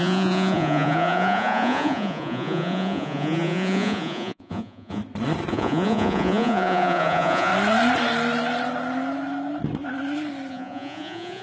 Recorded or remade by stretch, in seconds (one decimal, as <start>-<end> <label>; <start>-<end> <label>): 0.0-5.0 remade; 5.0-5.5 recorded; 5.5-7.5 remade; 7.5-10.5 recorded; 10.5-11.4 remade